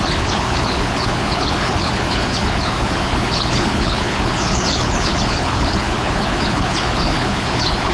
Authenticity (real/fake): fake